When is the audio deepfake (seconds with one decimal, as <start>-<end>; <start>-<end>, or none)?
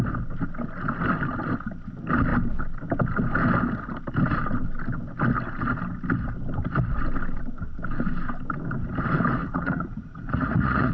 9.4-10.9